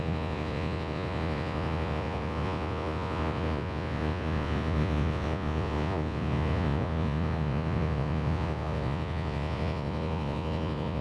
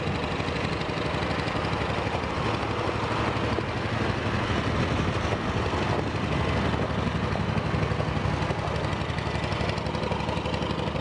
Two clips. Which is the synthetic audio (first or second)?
first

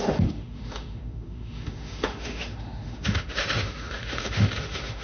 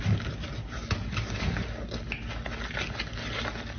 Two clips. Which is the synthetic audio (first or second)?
first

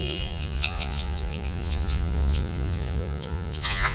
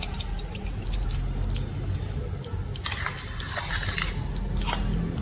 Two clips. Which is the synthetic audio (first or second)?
first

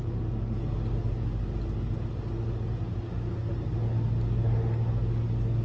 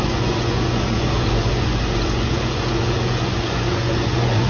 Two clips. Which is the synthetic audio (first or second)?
second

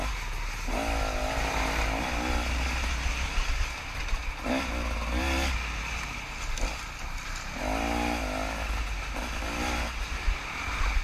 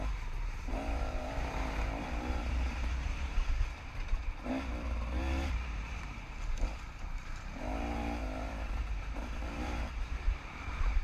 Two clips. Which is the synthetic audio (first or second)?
second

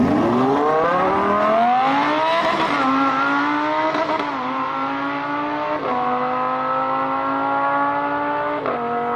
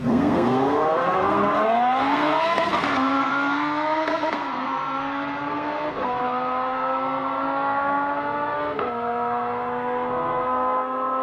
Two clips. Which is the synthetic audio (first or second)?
second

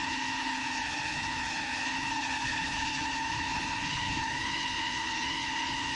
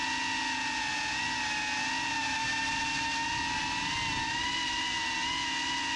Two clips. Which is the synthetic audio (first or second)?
first